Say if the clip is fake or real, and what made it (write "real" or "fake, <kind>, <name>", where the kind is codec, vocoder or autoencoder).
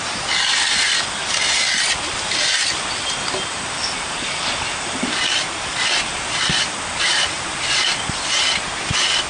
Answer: real